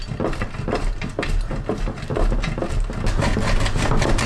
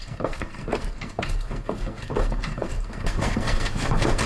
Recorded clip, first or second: first